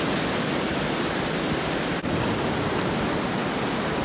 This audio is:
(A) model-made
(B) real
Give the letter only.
B